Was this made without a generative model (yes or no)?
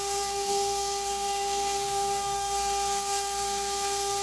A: no